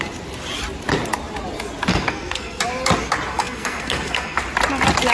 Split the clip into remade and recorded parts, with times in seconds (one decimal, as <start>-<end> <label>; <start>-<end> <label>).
0.0-1.9 recorded; 1.9-2.6 remade; 2.6-3.3 recorded; 3.3-4.4 remade; 4.4-5.1 recorded